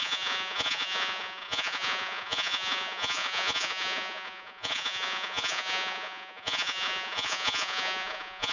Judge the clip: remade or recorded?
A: remade